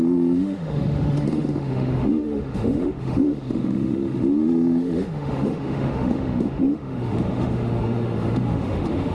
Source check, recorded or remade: remade